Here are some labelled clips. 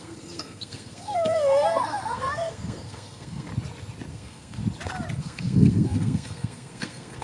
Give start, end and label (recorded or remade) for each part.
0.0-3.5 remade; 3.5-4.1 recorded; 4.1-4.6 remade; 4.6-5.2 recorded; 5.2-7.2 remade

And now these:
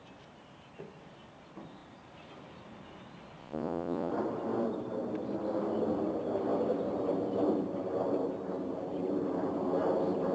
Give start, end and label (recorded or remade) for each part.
0.0-3.4 recorded; 3.4-4.1 remade; 4.1-10.3 recorded

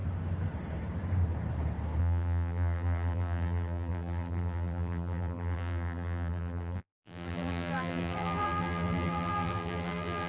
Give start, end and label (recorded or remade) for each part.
0.0-2.0 recorded; 2.0-10.3 remade

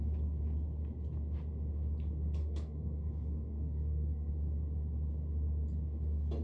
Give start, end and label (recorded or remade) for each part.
0.0-2.4 recorded; 2.4-4.3 remade; 4.3-6.4 recorded